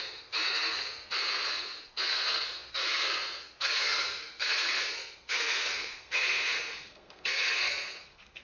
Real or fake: fake